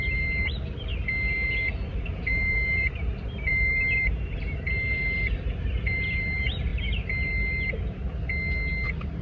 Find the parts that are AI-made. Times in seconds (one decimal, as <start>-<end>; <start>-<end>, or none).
0.0-0.9; 2.0-6.7